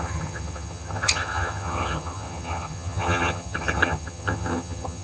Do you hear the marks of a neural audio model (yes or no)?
yes